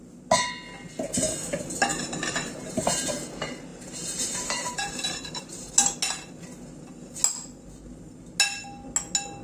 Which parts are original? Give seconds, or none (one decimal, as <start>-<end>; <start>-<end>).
0.0-1.9; 3.1-3.7; 5.7-9.4